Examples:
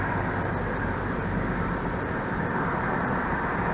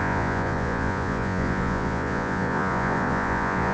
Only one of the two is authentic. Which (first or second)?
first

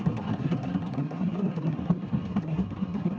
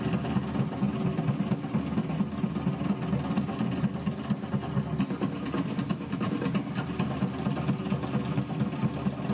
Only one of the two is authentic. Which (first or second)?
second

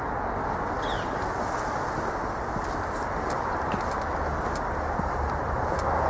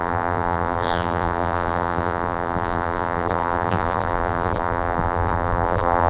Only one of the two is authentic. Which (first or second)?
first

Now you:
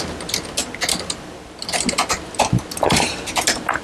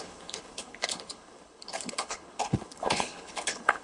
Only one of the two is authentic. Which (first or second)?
first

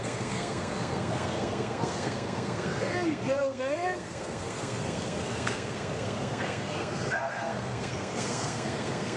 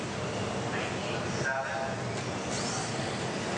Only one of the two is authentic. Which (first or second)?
second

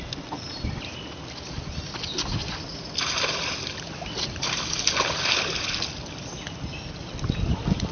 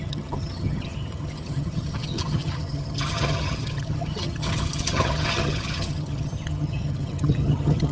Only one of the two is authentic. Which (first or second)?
first